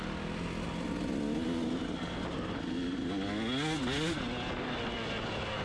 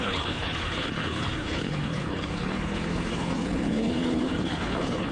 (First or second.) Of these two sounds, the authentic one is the first